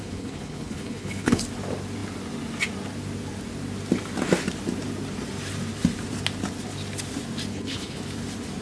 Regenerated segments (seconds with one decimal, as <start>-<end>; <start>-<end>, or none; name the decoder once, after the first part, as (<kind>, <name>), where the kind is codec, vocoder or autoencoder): 0.0-1.4 (codec, HILCodec); 7.5-8.0